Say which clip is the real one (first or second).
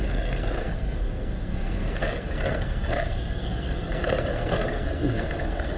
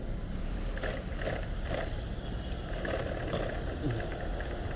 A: second